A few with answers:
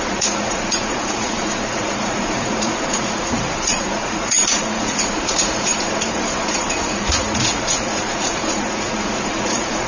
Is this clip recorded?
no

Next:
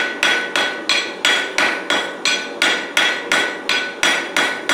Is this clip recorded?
yes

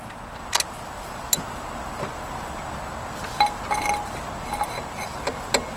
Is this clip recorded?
yes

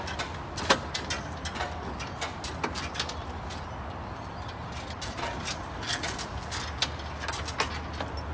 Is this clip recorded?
yes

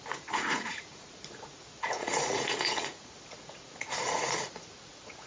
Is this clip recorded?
no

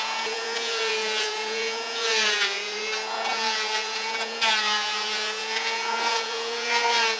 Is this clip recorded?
no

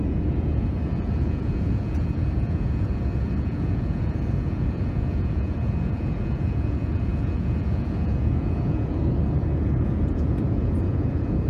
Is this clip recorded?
no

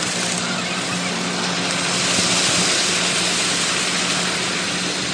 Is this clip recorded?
yes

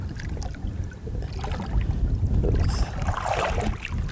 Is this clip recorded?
yes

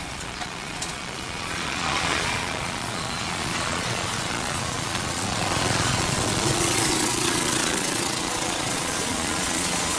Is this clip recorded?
no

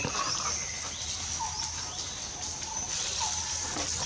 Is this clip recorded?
yes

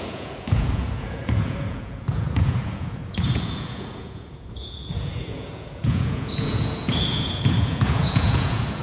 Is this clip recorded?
no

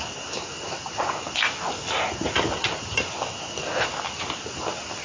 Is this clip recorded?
yes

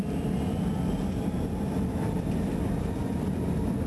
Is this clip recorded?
yes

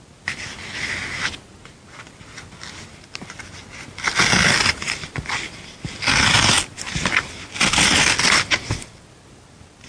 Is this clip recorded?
yes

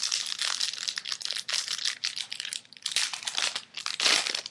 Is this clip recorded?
yes